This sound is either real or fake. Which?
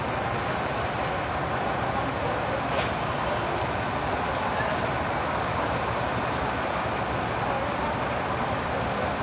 real